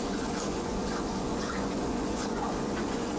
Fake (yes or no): yes